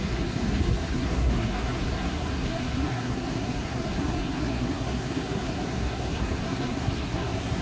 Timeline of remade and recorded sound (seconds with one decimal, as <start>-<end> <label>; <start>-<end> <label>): 0.0-7.6 remade